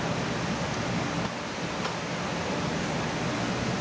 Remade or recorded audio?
recorded